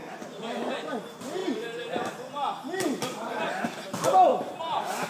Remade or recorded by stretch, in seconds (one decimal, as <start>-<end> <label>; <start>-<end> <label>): 0.0-5.1 recorded